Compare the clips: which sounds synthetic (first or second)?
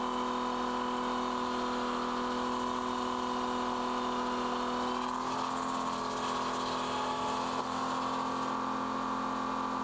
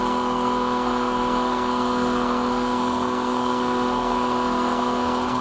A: second